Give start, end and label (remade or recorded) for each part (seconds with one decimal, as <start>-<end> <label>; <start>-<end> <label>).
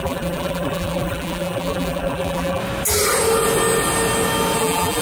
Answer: 0.0-2.6 remade; 2.6-4.6 recorded; 4.6-5.0 remade